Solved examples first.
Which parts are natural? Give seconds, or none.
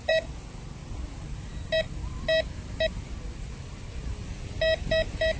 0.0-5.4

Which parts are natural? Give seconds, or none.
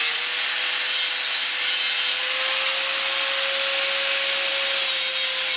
0.0-5.6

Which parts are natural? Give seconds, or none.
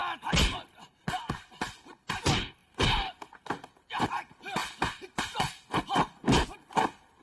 0.0-1.1; 4.6-6.7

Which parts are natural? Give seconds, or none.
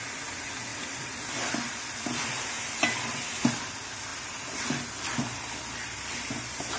0.0-0.7; 3.1-4.1; 4.9-6.8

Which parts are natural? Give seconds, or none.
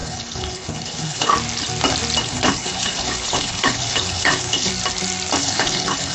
1.3-2.2; 4.7-5.4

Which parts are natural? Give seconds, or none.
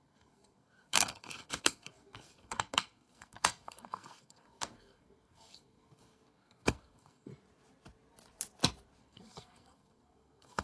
7.3-9.0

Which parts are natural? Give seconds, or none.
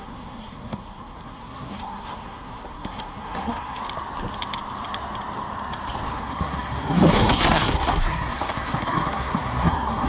3.8-6.1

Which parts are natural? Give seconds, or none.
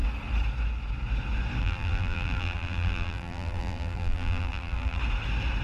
0.0-1.6; 5.0-5.6